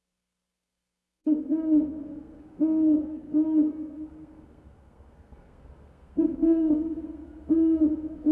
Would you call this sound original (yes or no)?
no